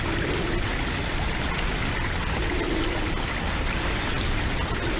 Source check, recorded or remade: recorded